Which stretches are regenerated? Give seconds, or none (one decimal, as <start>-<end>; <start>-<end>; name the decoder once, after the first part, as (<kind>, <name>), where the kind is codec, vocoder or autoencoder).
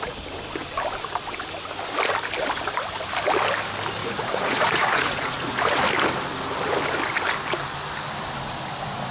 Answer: 4.0-5.6 (vocoder, Vocos)